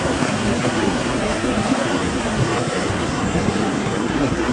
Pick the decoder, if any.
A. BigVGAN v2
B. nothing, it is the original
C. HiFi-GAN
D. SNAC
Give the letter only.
D